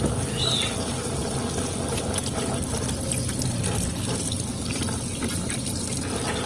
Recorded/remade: recorded